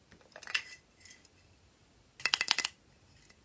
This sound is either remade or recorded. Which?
recorded